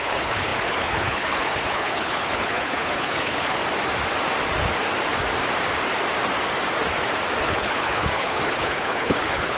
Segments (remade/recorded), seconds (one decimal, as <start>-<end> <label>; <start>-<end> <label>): 0.0-3.6 remade; 3.6-7.4 recorded; 7.4-9.6 remade